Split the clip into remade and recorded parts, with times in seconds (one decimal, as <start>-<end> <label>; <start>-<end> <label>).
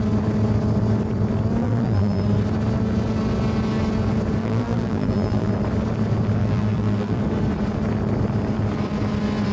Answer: 0.0-1.6 recorded; 1.6-2.2 remade; 2.2-4.4 recorded; 4.4-5.5 remade; 5.5-6.4 recorded; 6.4-7.2 remade; 7.2-9.5 recorded